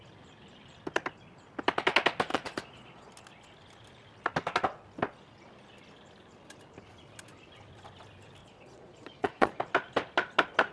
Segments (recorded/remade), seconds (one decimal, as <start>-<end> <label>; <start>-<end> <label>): 0.0-2.3 recorded; 2.3-3.1 remade; 3.1-8.4 recorded; 8.4-9.6 remade; 9.6-10.7 recorded